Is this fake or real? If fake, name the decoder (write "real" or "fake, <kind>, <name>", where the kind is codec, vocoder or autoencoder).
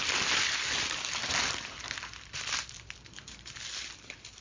fake, vocoder, BigVGAN v2